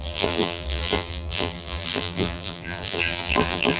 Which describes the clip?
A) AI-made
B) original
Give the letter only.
A